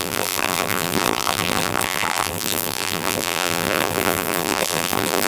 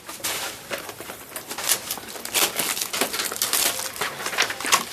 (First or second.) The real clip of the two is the second